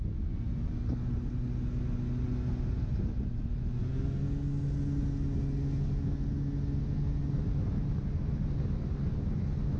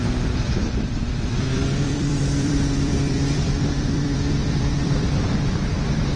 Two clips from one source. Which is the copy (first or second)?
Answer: second